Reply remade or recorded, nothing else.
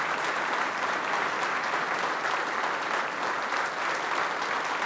recorded